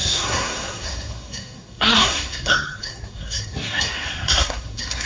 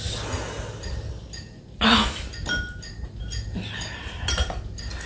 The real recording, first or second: second